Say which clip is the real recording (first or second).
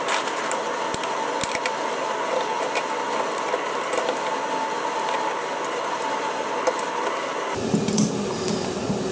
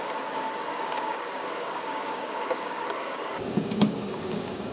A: first